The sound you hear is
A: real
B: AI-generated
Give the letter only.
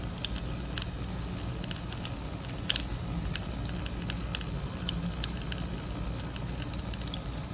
A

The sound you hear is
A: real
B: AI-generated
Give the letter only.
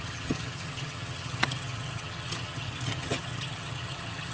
B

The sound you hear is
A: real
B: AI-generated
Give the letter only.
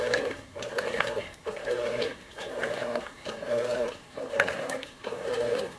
B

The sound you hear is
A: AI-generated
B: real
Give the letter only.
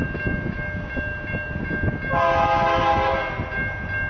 B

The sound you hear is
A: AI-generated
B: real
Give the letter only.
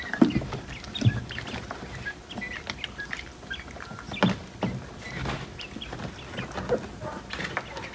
B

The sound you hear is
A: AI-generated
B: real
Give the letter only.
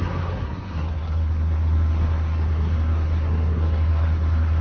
A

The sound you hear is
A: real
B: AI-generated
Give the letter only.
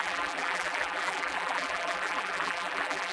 B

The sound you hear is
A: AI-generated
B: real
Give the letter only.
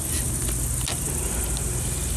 B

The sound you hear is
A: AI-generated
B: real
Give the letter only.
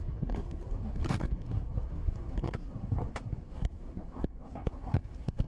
A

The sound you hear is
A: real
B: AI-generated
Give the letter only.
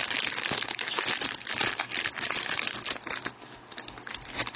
A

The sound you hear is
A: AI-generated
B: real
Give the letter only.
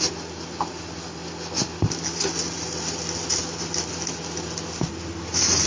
B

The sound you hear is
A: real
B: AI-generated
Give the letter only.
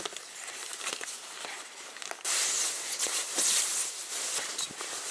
A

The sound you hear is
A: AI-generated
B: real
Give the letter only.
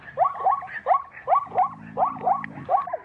B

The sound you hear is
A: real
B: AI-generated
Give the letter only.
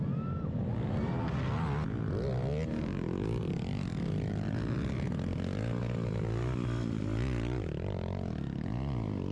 A